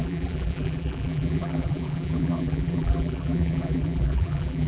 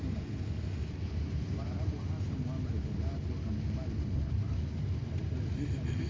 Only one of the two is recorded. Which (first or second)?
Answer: second